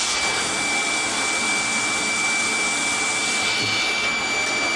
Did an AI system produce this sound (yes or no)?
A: no